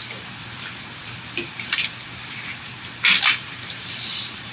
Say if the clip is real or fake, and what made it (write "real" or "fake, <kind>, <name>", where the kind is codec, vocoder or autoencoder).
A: fake, vocoder, BigVGAN v2